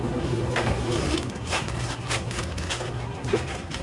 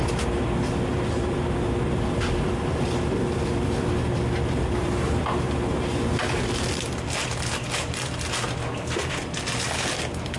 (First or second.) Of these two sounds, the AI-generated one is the first